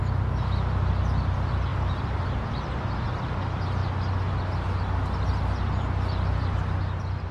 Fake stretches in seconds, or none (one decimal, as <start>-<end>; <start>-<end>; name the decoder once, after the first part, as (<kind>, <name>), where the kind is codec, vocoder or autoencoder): 1.7-2.9 (vocoder, BigVGAN v2)